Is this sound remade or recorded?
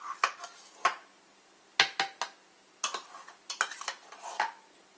recorded